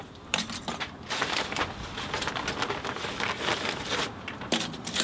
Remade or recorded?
remade